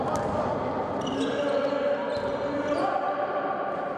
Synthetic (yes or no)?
yes